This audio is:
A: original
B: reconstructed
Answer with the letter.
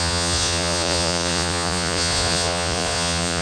B